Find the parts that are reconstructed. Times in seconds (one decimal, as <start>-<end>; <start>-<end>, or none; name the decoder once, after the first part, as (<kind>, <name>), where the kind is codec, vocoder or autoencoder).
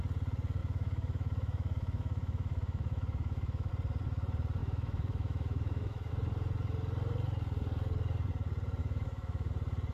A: 0.6-3.7 (autoencoder, DAC-VAE); 4.6-6.1; 8.8-9.5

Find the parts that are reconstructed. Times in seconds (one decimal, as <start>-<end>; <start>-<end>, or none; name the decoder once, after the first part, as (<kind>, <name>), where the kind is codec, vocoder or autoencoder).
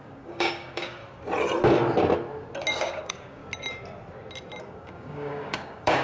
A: 0.0-1.0 (codec, DAC); 2.7-3.4; 4.6-6.0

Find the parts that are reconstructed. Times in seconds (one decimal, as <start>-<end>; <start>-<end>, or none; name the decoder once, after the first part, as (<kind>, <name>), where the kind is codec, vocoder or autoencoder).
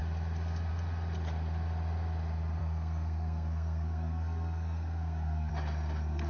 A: 2.6-5.5 (codec, SNAC)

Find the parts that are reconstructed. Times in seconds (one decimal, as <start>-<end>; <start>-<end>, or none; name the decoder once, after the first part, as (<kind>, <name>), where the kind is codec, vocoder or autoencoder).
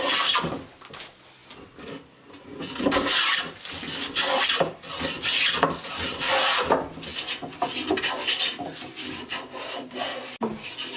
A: none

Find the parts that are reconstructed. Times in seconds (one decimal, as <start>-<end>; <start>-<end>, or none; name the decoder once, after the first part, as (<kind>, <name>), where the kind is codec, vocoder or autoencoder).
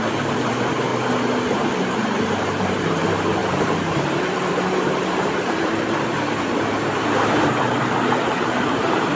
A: 0.0-0.9 (vocoder, BigVGAN v2); 2.6-9.2